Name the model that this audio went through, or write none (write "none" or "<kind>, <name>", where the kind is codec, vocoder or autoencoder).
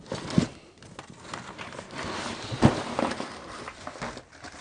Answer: none